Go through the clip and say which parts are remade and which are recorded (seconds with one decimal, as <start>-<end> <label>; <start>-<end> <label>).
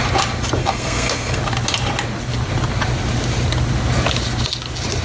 0.0-0.6 recorded; 0.6-1.4 remade; 1.4-5.0 recorded